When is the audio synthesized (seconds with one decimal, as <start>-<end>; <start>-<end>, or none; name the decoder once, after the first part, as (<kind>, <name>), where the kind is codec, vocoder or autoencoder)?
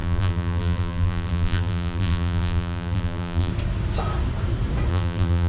0.0-3.5 (vocoder, BigVGAN v2); 4.9-5.5